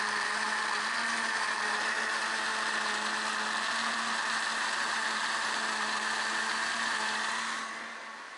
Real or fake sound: real